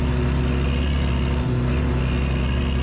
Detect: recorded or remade recorded